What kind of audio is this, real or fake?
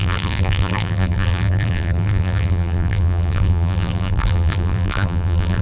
fake